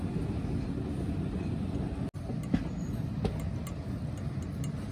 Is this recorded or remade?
recorded